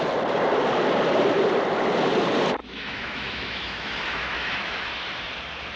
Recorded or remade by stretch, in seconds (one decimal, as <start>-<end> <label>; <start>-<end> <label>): 0.0-2.6 recorded; 2.6-4.9 remade; 4.9-5.8 recorded